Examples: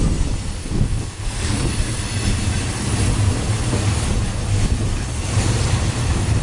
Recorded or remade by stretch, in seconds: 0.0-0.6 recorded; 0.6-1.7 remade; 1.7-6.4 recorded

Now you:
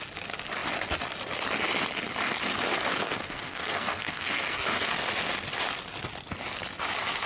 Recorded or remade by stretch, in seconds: 0.0-3.0 recorded; 3.0-4.9 remade; 4.9-7.3 recorded

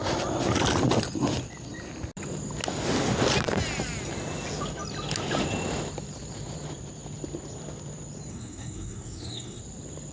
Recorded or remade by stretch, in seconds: 0.0-8.3 recorded; 8.3-9.6 remade; 9.6-10.1 recorded

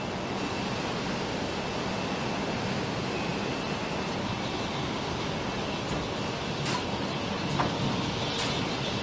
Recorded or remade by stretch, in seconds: 0.0-9.0 recorded

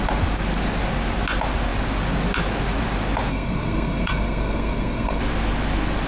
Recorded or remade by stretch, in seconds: 0.0-3.3 recorded; 3.3-5.2 remade; 5.2-6.1 recorded

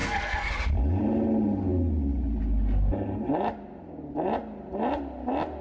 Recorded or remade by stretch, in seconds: 0.0-0.5 remade; 0.5-5.6 recorded